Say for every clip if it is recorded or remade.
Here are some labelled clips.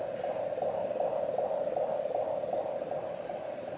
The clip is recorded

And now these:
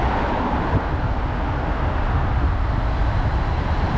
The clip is recorded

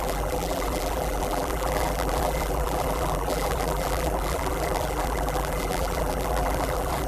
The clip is remade